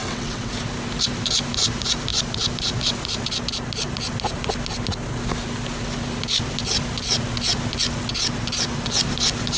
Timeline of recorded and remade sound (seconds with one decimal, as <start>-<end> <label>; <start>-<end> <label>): 0.0-0.5 remade; 0.5-9.6 recorded